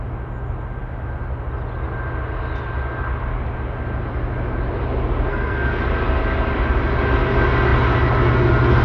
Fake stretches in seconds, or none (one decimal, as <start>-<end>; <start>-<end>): 5.3-5.8